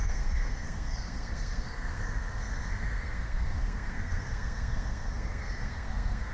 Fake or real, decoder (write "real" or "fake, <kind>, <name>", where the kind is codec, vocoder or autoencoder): fake, codec, SNAC